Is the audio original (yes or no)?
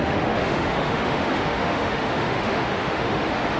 no